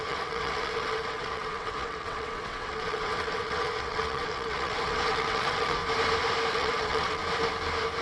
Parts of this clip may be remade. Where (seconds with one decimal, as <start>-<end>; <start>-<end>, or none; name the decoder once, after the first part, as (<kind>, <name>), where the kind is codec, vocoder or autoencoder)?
0.0-5.8 (vocoder, WaveNeXt); 6.5-7.2

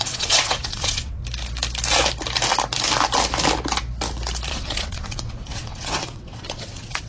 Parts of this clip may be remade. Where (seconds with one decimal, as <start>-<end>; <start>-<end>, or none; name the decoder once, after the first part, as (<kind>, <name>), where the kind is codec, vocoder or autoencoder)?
0.0-1.2 (vocoder, WaveNeXt); 4.5-7.1